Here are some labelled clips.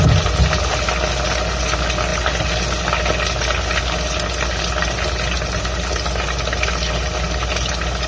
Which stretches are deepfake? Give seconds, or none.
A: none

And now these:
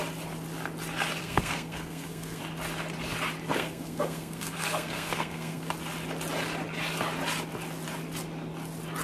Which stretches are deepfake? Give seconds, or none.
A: 1.2-2.4 (codec, SNAC); 3.5-5.7

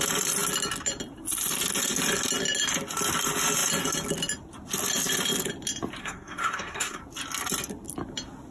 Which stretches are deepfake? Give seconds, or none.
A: 6.0-7.0 (codec, SNAC)

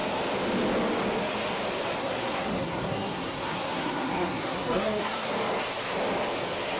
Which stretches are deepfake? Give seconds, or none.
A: 2.0-5.3 (codec, SNAC)

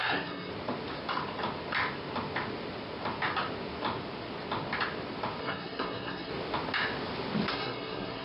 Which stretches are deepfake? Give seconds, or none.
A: 0.0-0.5 (codec, SNAC); 5.4-6.3; 7.5-8.2

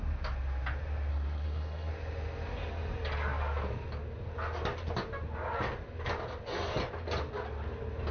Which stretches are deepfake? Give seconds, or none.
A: 1.1-1.9 (codec, SNAC)